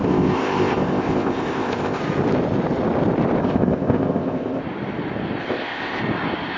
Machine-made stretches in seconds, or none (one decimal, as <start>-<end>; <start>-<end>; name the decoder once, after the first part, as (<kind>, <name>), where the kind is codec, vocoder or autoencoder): 0.0-2.0 (codec, ZipCodec); 3.4-4.6; 5.4-6.0